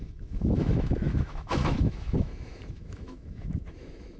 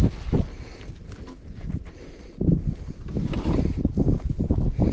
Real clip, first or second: second